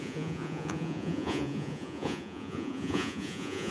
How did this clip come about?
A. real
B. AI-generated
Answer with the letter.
B